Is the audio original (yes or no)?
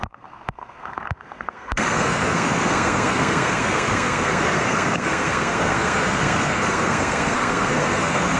no